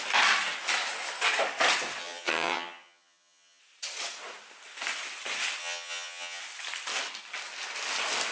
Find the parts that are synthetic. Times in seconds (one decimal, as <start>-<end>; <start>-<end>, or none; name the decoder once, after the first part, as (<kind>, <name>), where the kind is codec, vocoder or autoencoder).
2.0-3.6 (vocoder, HiFi-GAN); 5.6-6.4